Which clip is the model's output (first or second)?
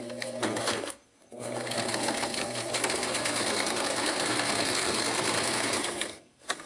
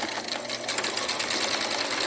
first